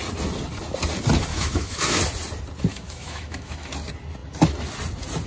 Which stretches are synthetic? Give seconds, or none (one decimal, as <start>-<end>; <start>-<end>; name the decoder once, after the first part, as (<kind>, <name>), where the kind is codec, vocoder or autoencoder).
1.3-2.0 (autoencoder, DAC-VAE); 2.7-3.7